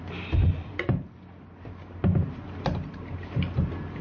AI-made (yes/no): no